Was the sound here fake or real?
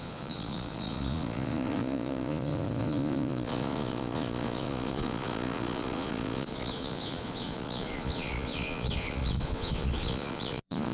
fake